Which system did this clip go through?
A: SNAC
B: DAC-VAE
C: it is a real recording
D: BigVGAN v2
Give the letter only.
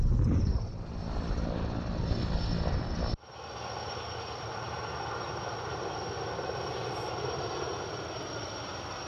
C